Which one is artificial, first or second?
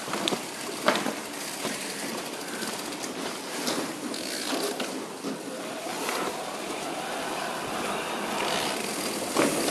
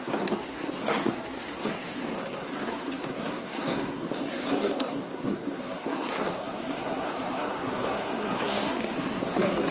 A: second